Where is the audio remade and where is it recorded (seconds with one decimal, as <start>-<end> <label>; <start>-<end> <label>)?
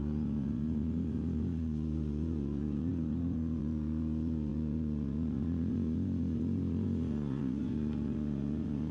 0.0-8.9 remade